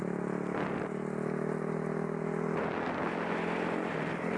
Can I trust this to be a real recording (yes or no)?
yes